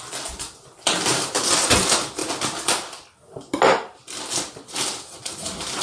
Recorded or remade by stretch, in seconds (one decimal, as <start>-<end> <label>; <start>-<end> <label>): 0.0-5.8 recorded